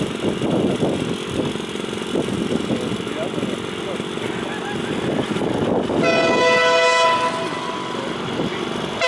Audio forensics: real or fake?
real